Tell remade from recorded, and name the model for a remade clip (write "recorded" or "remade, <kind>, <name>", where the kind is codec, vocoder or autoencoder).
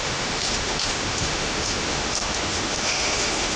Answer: remade, autoencoder, DAC-VAE